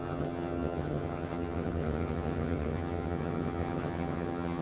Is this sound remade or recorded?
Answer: remade